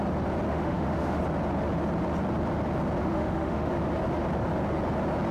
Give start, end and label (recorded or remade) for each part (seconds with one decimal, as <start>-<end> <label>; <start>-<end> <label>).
0.0-0.5 recorded; 0.5-1.2 remade; 1.2-3.0 recorded; 3.0-3.7 remade; 3.7-5.3 recorded